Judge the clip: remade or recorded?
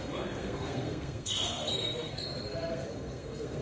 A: remade